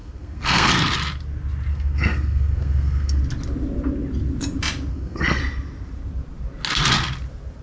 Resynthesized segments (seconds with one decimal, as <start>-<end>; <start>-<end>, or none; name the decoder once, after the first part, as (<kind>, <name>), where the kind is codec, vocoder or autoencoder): 0.0-0.7 (codec, SNAC); 1.7-3.2; 4.9-5.4